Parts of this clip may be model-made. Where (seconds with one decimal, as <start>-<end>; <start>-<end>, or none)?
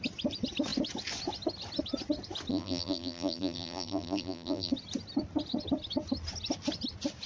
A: 2.5-4.7